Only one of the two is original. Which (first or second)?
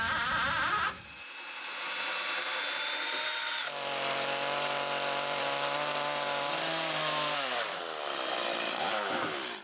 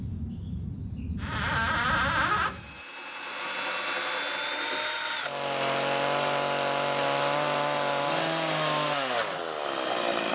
second